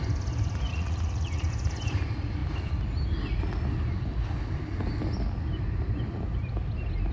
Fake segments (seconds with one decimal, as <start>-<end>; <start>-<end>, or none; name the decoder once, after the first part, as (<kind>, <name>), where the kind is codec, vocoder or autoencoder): 0.7-1.5 (vocoder, Vocos)